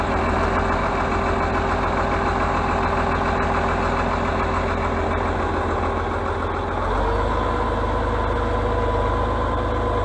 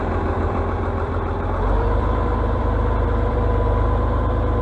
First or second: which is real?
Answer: first